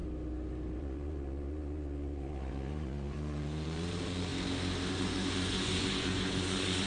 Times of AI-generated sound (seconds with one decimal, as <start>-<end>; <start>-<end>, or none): 0.8-4.3; 4.9-6.9